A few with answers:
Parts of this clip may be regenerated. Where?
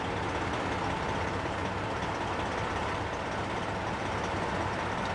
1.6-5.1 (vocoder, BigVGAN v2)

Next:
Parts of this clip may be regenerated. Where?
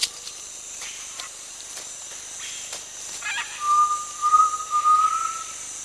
0.0-2.1 (vocoder, BigVGAN v2); 4.2-5.0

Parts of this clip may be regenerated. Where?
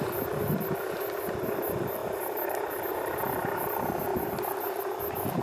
2.0-3.2 (vocoder, BigVGAN v2); 4.1-4.8